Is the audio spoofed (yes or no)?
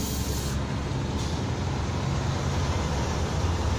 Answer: no